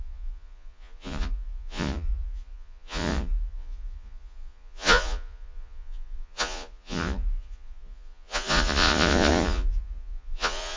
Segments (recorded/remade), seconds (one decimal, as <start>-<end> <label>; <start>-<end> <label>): 0.0-10.8 remade